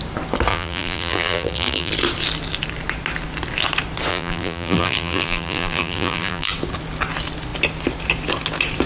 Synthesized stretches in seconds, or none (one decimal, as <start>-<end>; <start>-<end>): 0.5-1.9; 4.1-6.5